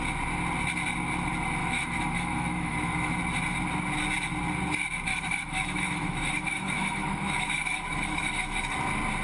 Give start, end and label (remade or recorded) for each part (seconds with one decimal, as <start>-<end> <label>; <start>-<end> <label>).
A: 0.0-1.6 recorded; 1.6-3.2 remade; 3.2-5.1 recorded; 5.1-8.7 remade; 8.7-9.2 recorded